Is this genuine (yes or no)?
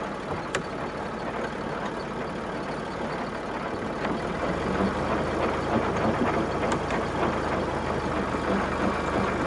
yes